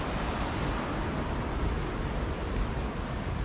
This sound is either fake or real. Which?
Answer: real